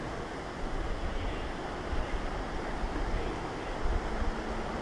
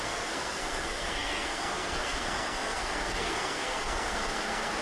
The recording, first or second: first